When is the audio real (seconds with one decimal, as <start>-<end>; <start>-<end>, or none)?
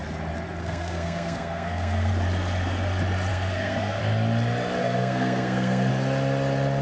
0.0-0.6; 2.1-3.3; 4.0-4.8; 5.9-6.8